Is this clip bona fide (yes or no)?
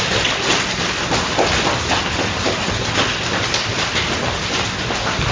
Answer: yes